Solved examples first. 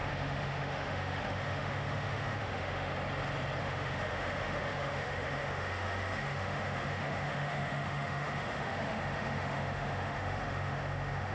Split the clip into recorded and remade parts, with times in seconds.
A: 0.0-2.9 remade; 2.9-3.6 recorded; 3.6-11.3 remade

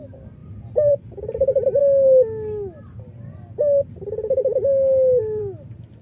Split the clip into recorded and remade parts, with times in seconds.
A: 0.0-6.0 recorded

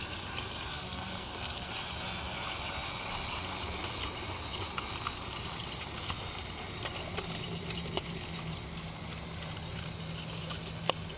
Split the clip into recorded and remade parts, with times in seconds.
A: 0.0-0.7 recorded; 0.7-1.7 remade; 1.7-11.2 recorded

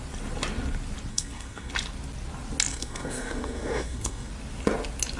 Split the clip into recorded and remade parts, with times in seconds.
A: 0.0-1.1 recorded; 1.1-1.7 remade; 1.7-2.7 recorded; 2.7-4.3 remade; 4.3-5.2 recorded